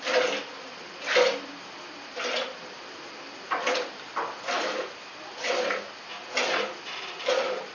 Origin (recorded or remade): recorded